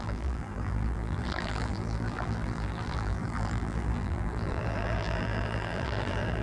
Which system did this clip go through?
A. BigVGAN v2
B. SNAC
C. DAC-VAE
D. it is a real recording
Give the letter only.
A